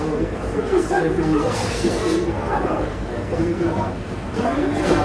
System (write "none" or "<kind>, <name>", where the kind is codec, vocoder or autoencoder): codec, SNAC